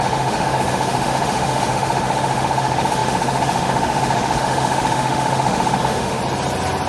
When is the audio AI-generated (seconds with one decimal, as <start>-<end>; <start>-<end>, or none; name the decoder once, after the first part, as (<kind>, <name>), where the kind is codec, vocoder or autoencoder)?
0.0-6.2 (autoencoder, DAC-VAE)